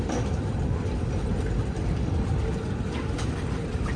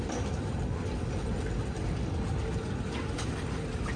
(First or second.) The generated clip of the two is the first